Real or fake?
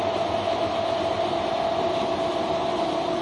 real